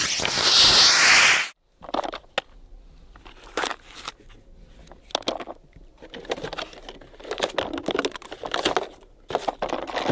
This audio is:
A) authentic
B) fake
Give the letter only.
A